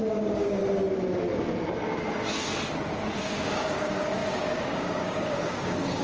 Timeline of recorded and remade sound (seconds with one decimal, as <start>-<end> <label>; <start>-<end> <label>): 0.0-0.6 remade; 0.6-3.2 recorded; 3.2-6.0 remade